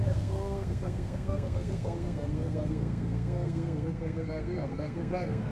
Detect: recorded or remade remade